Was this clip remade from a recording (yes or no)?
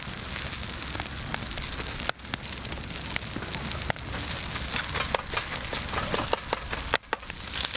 no